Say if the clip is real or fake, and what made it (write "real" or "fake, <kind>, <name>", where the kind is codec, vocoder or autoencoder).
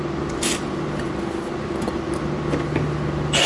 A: real